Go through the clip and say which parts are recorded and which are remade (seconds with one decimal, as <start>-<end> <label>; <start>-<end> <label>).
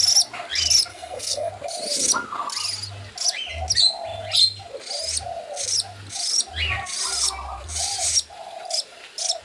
0.0-0.9 recorded; 0.9-1.5 remade; 1.5-9.4 recorded